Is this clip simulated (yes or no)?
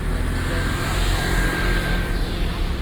no